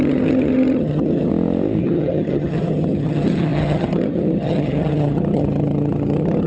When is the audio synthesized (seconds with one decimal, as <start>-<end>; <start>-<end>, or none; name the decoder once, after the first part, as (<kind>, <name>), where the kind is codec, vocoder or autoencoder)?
0.0-1.3 (vocoder, HiFi-GAN); 1.8-6.5

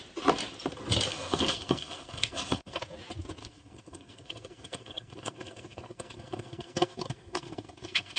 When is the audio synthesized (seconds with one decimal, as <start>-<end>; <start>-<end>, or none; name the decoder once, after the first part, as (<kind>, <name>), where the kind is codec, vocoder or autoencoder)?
1.1-2.8 (codec, SNAC); 3.4-8.2

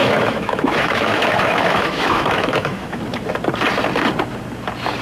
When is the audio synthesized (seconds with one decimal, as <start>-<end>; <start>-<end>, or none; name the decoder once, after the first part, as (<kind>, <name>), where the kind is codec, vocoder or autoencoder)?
0.0-3.0 (autoencoder, DAC-VAE)

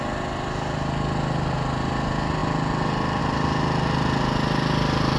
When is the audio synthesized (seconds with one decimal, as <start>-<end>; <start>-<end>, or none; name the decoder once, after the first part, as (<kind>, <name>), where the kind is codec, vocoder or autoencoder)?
none

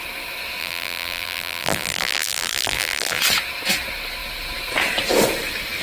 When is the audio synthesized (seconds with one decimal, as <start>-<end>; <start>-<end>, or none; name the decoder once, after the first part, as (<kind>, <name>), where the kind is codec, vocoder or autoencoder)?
0.6-3.2 (vocoder, BigVGAN v2)

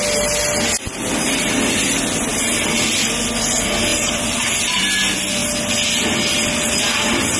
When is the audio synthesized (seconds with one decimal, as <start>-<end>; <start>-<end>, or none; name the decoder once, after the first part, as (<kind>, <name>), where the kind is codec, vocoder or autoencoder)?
3.9-4.8 (vocoder, BigVGAN v2)

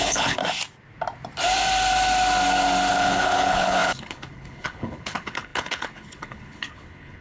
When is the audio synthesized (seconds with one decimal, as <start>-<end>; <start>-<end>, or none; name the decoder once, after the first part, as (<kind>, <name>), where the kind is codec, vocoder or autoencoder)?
0.0-0.4 (codec, HILCodec); 2.9-7.2

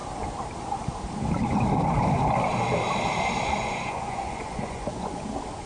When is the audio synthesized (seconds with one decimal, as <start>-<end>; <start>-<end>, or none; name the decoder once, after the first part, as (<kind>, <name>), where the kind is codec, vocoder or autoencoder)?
3.6-5.1 (vocoder, Vocos)